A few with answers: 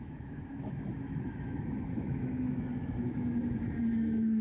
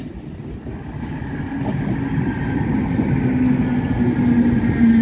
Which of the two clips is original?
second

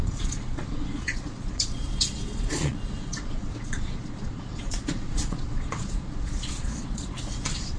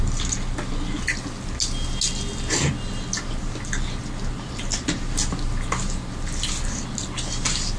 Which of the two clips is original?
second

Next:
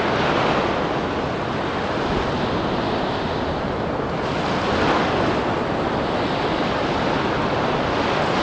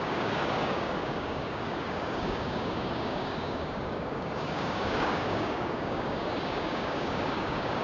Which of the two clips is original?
first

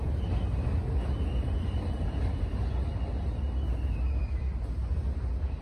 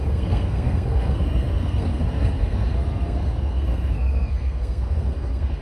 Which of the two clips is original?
first